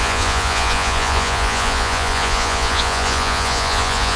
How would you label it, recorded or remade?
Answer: remade